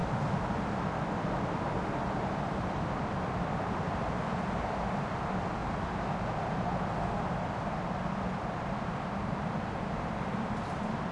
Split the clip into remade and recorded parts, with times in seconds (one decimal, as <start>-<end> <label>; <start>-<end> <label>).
0.0-0.8 recorded; 0.8-5.6 remade; 5.6-7.2 recorded; 7.2-11.1 remade